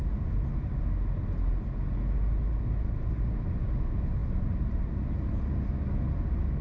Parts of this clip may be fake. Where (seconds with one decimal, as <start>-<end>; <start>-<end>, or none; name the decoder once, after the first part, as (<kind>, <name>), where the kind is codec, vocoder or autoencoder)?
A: none

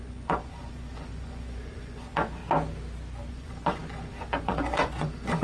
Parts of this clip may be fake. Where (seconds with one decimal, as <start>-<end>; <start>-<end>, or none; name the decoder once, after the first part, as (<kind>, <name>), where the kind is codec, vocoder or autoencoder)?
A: 0.0-2.4 (vocoder, Vocos); 3.3-5.4